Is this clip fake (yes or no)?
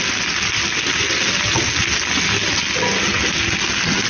no